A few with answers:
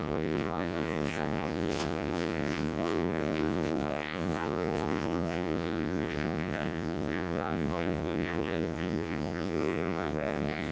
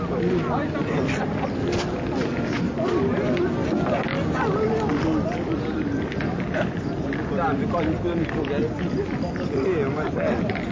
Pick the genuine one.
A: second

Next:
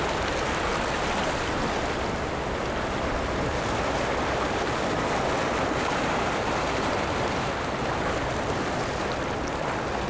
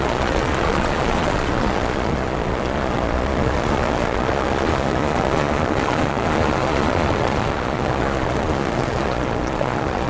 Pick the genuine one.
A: first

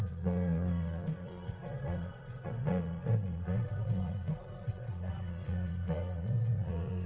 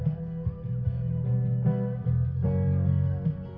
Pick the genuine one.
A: second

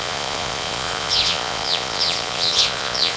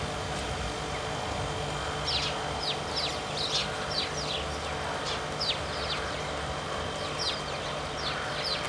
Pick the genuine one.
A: second